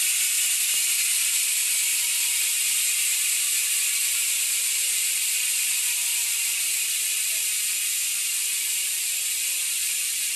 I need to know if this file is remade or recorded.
recorded